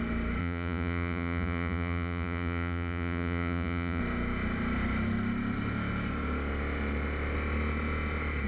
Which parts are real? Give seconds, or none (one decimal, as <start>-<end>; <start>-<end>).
0.0-0.4; 4.0-8.5